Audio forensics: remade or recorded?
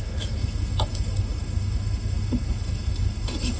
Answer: remade